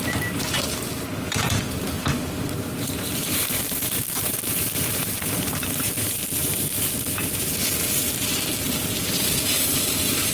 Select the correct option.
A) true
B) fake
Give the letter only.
B